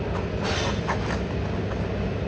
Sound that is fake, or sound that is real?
real